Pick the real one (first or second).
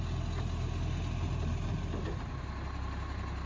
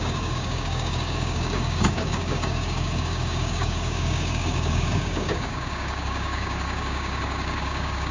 first